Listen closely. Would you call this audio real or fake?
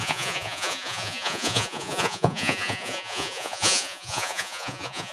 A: fake